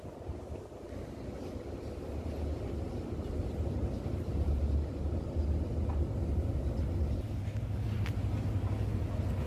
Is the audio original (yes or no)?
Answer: yes